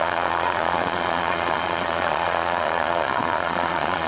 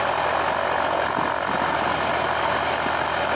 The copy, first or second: first